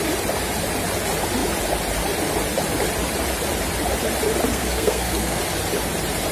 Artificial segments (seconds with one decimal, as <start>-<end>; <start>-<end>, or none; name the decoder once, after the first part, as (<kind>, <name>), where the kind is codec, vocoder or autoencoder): 4.5-5.4 (codec, SNAC)